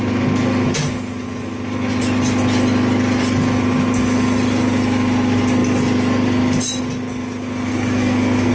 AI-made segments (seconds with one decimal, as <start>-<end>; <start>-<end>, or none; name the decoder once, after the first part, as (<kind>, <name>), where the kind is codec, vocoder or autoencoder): 7.7-8.5 (codec, SNAC)